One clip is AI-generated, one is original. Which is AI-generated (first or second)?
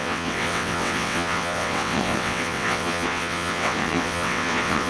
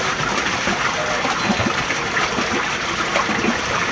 first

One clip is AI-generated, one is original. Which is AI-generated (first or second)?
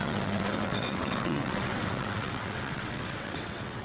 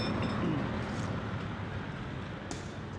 first